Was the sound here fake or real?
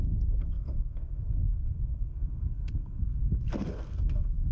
fake